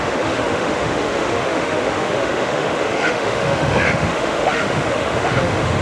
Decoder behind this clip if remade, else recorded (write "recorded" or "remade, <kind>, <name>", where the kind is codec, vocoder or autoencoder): remade, autoencoder, DAC-VAE